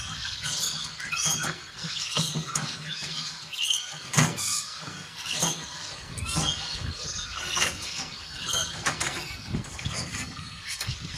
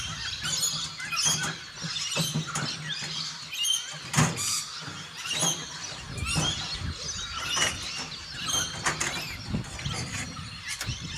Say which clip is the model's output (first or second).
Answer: first